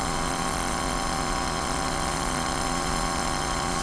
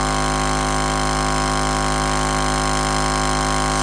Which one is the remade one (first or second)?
first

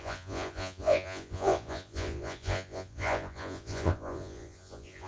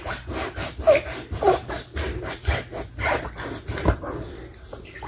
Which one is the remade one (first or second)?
first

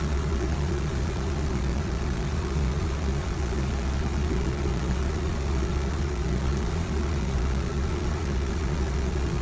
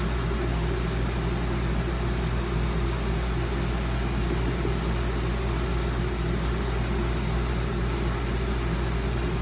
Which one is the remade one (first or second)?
first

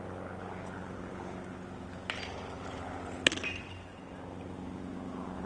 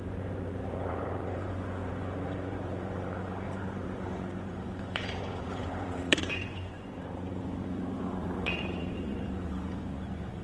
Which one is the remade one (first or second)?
second